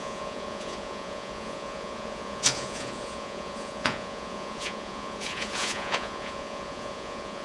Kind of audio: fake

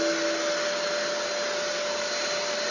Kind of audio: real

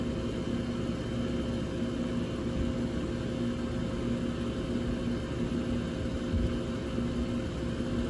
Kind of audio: real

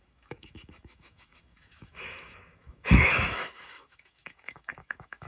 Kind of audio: fake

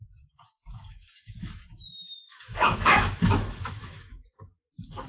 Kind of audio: fake